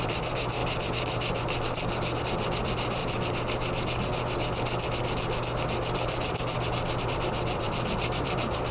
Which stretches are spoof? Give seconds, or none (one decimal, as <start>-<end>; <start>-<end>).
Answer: 0.0-0.6; 2.2-3.0; 7.0-8.7

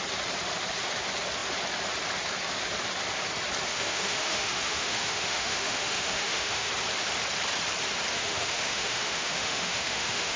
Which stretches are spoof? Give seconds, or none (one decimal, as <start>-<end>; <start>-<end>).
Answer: 3.7-6.7; 8.1-10.4

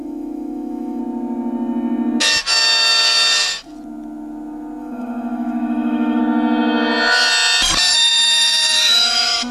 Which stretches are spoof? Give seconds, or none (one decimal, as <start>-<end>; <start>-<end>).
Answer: 0.0-1.0; 4.8-6.2; 7.9-9.5

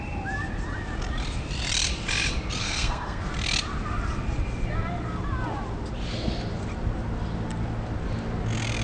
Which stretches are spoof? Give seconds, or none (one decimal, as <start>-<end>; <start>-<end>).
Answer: 2.6-3.2

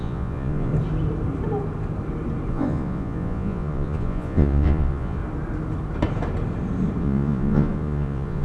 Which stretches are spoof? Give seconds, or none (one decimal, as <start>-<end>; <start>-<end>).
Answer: 0.0-0.7; 2.5-5.2; 7.0-8.4

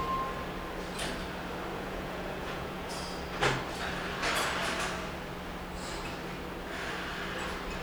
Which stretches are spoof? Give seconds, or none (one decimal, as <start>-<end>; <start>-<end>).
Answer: 1.7-2.9

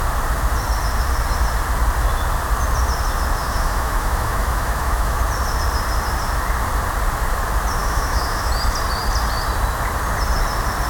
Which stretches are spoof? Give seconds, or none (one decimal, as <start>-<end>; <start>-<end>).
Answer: 3.4-5.2; 7.8-8.5

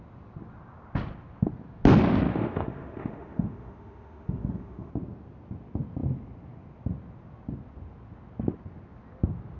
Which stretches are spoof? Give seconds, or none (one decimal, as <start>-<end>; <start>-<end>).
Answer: 2.3-4.9